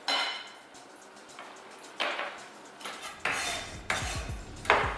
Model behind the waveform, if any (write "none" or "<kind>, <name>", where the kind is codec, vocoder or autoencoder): none